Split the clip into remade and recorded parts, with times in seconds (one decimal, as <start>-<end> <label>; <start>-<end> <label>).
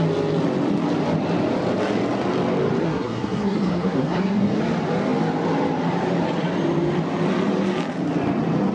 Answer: 0.0-2.8 recorded; 2.8-4.6 remade; 4.6-8.7 recorded